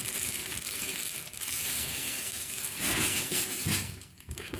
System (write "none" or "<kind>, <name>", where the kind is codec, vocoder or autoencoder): codec, SNAC